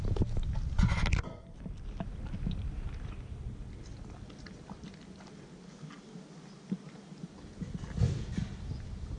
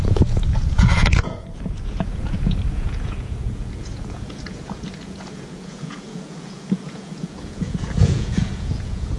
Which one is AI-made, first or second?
second